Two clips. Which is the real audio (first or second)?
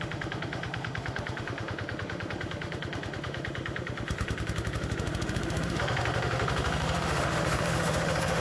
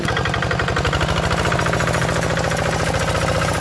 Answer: second